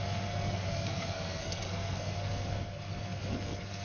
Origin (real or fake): fake